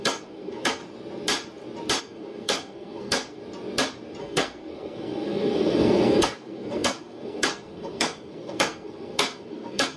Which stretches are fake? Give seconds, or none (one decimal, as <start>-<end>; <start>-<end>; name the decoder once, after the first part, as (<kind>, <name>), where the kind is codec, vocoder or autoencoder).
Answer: 0.0-0.8 (codec, SNAC); 2.0-3.4; 4.2-10.0